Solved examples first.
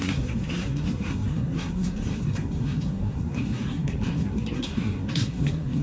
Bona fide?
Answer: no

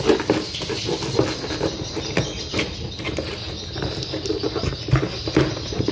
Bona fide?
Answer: yes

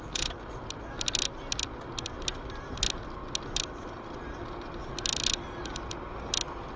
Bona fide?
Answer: yes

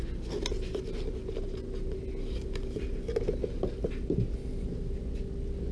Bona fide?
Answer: yes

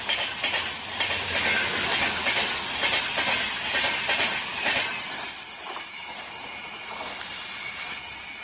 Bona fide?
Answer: yes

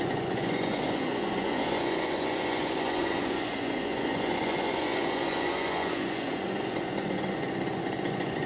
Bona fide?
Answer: no